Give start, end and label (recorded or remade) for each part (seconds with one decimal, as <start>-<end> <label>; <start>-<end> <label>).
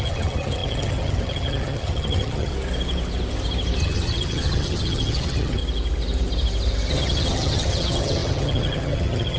0.0-2.5 remade; 2.5-3.8 recorded; 3.8-5.6 remade; 5.6-6.9 recorded; 6.9-9.4 remade